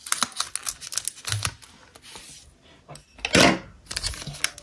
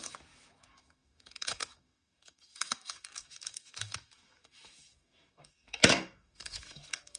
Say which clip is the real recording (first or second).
first